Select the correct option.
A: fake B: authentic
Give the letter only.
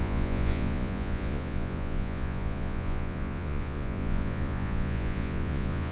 A